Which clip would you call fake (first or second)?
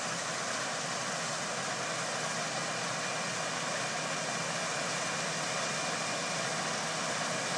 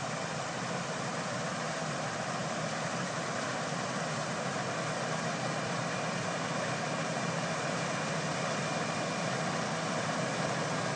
second